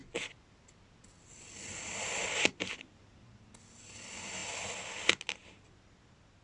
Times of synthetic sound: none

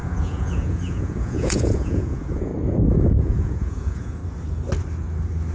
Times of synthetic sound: 0.0-2.5 (vocoder, Vocos); 3.2-4.2

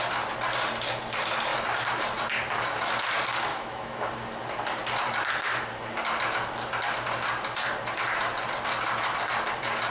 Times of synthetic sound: 3.5-4.1 (autoencoder, DAC-VAE)

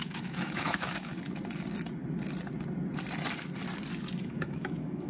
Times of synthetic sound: 0.0-1.1 (autoencoder, DAC-VAE); 4.2-5.1

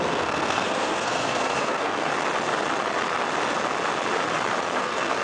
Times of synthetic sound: 0.0-2.1 (codec, SNAC); 4.8-5.2

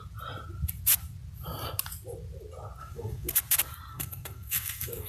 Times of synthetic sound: 2.8-3.3 (codec, SNAC); 3.9-5.1

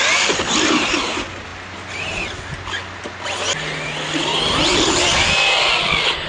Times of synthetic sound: none

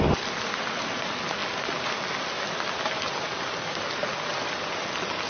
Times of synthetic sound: none